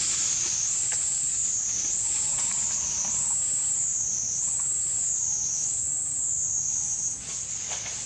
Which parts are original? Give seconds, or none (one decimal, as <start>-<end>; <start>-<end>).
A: 2.4-8.1